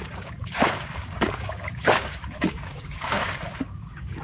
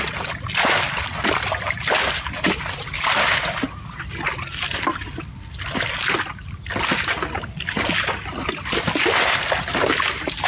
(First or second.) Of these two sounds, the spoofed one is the first